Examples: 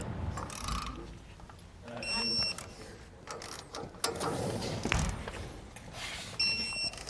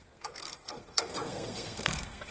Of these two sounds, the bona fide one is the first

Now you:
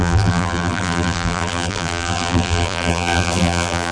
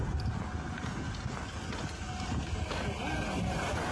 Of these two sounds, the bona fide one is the second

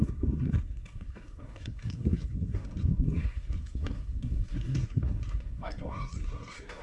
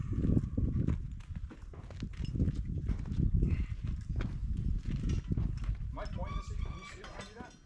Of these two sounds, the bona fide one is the second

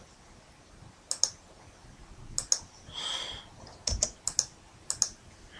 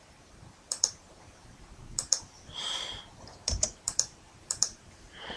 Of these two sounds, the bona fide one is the first